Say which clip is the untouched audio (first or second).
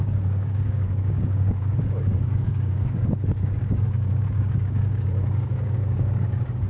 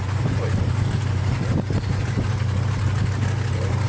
second